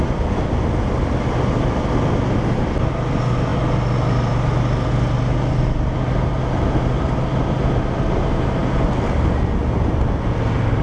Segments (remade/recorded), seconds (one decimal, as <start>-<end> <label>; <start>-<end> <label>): 0.0-10.8 recorded